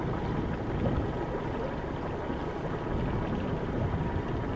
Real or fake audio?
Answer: real